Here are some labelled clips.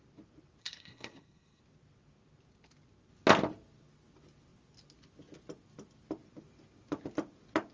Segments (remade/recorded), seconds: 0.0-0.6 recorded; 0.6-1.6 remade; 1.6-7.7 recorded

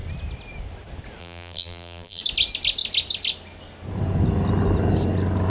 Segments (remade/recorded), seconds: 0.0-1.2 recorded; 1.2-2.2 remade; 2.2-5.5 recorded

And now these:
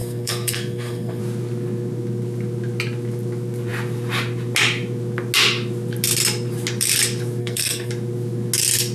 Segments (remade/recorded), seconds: 0.0-1.2 remade; 1.2-7.4 recorded; 7.4-7.9 remade; 7.9-8.9 recorded

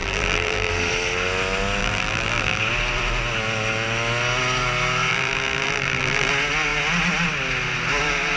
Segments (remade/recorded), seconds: 0.0-0.7 remade; 0.7-1.8 recorded; 1.8-2.6 remade; 2.6-5.1 recorded; 5.1-6.3 remade; 6.3-8.4 recorded

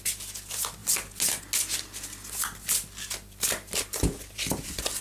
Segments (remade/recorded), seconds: 0.0-5.0 recorded